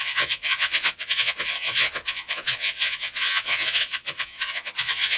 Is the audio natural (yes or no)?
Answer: no